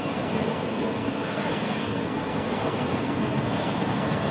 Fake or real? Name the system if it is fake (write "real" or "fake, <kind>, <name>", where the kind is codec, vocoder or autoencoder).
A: fake, codec, SNAC